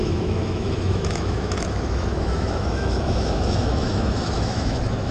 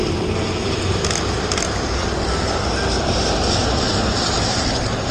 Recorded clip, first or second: second